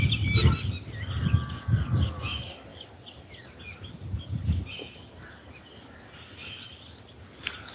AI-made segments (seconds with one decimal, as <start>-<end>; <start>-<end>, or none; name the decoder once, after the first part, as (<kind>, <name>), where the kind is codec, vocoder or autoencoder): none